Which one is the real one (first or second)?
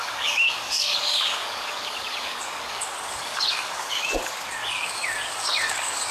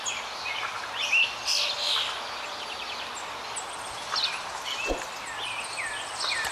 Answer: second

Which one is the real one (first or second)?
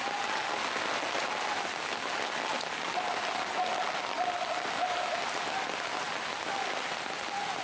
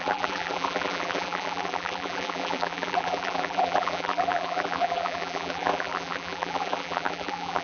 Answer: first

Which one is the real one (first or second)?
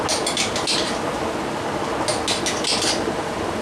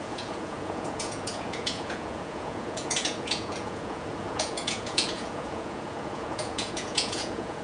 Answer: first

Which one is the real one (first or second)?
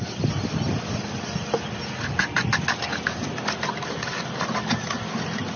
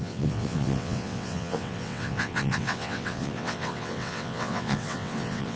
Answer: first